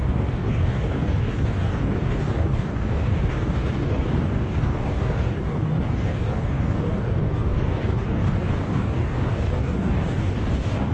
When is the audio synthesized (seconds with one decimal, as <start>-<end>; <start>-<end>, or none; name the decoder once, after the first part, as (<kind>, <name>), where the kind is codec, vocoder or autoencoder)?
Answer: 0.0-10.9 (codec, DAC)